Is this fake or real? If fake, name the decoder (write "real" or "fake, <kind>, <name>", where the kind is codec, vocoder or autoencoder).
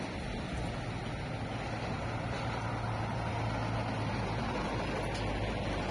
real